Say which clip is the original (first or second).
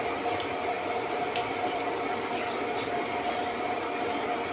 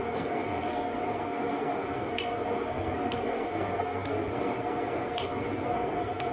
first